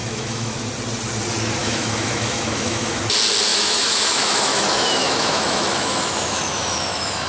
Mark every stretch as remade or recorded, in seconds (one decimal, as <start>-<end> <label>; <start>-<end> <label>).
0.0-0.6 remade; 0.6-1.6 recorded; 1.6-3.0 remade; 3.0-3.5 recorded; 3.5-7.3 remade